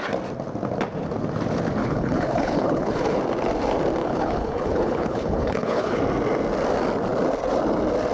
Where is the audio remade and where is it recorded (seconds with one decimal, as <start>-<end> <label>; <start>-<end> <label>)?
0.0-1.8 recorded; 1.8-3.2 remade; 3.2-4.0 recorded; 4.0-6.0 remade; 6.0-8.1 recorded